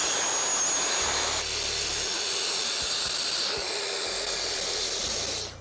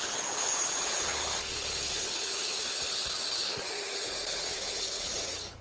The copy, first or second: second